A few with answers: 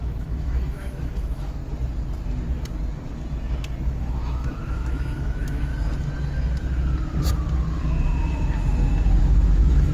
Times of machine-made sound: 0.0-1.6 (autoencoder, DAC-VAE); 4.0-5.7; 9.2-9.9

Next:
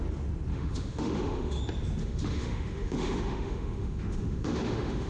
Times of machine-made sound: 0.5-1.6 (autoencoder, DAC-VAE); 2.0-5.1